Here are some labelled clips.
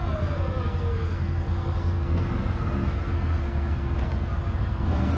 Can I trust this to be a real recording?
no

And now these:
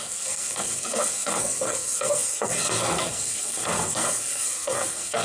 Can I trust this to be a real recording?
no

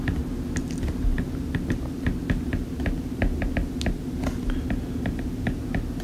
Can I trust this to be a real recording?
yes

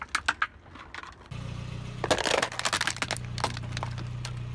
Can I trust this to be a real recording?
yes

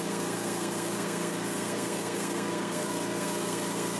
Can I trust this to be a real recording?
no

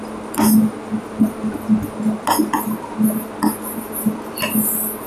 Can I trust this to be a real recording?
yes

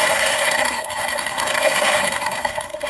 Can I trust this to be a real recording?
no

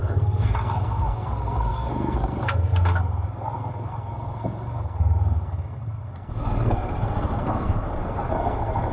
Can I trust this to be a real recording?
no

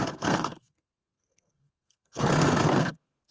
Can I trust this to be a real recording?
no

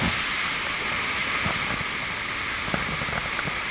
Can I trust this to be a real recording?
yes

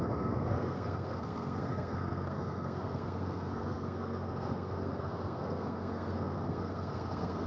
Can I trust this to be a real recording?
no